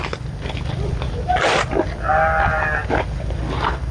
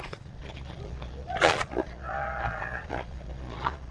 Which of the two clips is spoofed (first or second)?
second